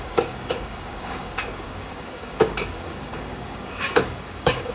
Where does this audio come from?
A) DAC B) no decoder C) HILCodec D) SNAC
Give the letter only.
A